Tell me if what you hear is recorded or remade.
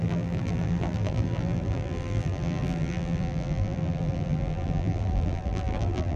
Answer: remade